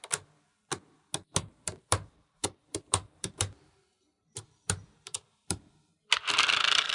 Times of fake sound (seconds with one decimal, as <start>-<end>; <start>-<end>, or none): 1.5-5.6